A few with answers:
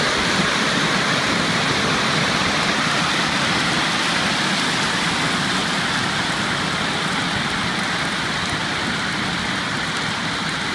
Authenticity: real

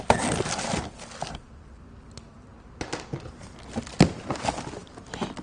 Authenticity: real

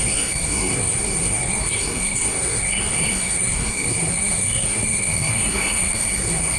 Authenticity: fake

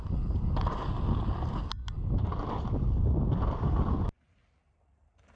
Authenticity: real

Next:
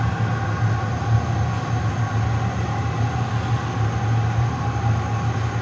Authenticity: real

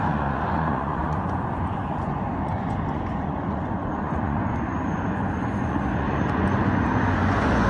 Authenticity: fake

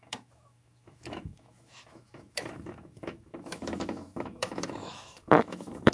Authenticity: fake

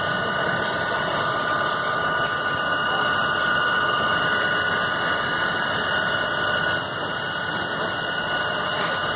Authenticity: real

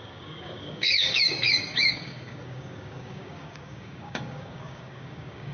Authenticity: fake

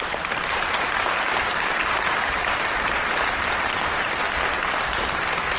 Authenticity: fake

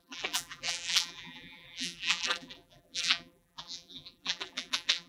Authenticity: fake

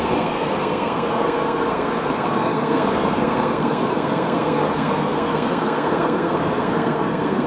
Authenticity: fake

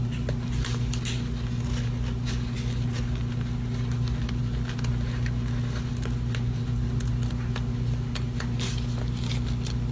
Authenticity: real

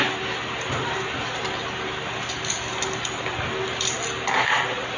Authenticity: real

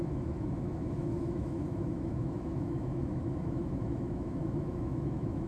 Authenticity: fake